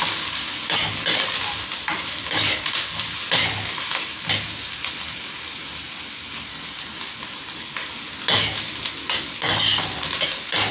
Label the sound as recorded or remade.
recorded